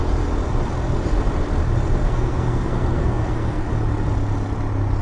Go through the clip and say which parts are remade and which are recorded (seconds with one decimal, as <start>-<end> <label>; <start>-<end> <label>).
0.0-2.0 recorded; 2.0-3.7 remade; 3.7-5.0 recorded